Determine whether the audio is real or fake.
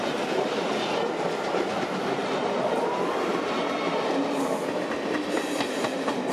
real